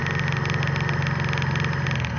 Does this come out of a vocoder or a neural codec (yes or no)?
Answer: no